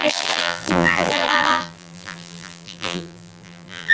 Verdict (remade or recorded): remade